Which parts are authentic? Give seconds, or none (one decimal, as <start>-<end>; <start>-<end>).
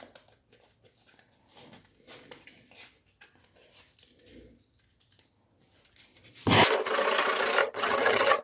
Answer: 0.0-7.6